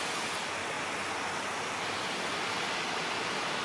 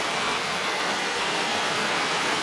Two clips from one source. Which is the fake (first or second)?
second